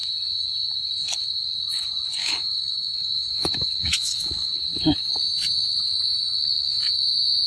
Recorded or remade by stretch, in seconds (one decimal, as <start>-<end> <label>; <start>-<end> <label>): 0.0-2.2 recorded; 2.2-4.5 remade; 4.5-6.1 recorded; 6.1-6.8 remade; 6.8-7.5 recorded